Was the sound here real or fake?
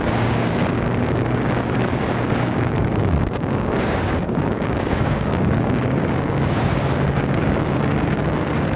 fake